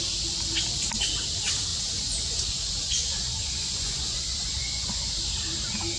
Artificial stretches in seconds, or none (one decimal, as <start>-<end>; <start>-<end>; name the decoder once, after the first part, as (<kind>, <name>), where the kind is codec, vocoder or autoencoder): 1.7-5.3 (vocoder, Vocos)